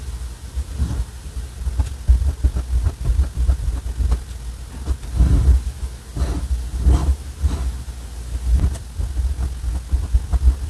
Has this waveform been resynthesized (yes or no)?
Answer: no